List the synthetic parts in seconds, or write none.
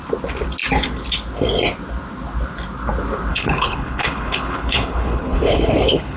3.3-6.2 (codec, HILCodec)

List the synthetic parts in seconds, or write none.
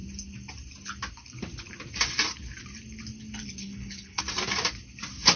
3.6-4.2 (codec, HILCodec)